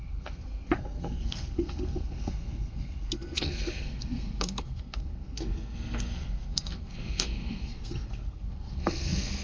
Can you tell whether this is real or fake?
fake